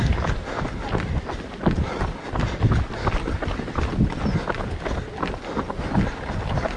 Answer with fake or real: real